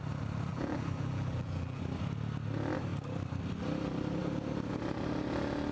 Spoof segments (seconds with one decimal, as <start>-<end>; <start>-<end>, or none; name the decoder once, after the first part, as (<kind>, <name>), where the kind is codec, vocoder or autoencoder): 0.5-1.8 (vocoder, BigVGAN v2)